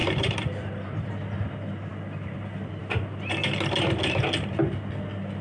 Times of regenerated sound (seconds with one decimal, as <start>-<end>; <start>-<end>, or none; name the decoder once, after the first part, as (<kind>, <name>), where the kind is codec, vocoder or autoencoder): 0.0-1.1 (vocoder, BigVGAN v2)